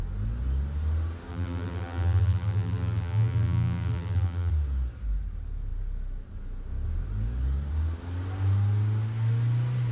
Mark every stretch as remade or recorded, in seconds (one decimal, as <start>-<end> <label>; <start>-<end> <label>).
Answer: 0.0-1.3 recorded; 1.3-4.5 remade; 4.5-9.9 recorded

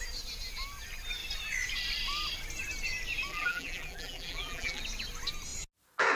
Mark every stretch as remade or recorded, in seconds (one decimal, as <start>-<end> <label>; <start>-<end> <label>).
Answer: 0.0-3.3 recorded; 3.3-4.8 remade; 4.8-6.2 recorded

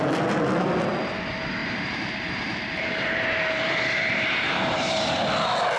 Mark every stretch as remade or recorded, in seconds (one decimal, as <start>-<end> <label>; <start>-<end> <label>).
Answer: 0.0-1.6 recorded; 1.6-5.1 remade; 5.1-5.8 recorded

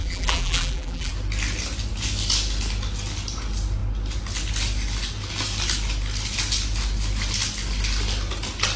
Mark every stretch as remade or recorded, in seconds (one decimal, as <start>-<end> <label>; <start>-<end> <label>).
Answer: 0.0-1.1 remade; 1.1-8.8 recorded

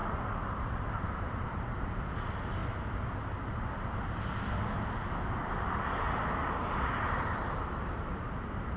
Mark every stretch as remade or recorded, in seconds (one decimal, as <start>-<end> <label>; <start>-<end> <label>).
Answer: 0.0-2.1 remade; 2.1-6.4 recorded; 6.4-8.8 remade

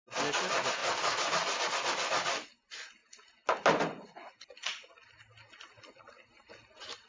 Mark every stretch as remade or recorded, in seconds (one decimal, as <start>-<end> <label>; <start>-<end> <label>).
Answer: 0.0-7.1 recorded